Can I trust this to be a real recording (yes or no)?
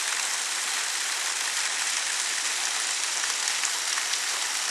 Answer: yes